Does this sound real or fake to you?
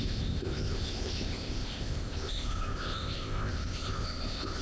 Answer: fake